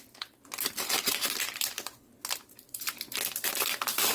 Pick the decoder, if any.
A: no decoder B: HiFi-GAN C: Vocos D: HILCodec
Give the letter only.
A